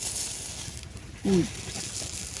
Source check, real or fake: real